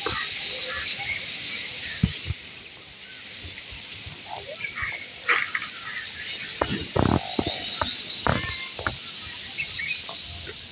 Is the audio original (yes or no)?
yes